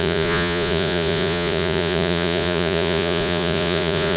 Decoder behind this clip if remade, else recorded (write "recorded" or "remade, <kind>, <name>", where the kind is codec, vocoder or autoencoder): remade, vocoder, Vocos